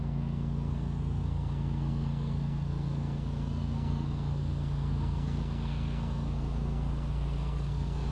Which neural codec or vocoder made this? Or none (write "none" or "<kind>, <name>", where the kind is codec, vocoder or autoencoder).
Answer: codec, SNAC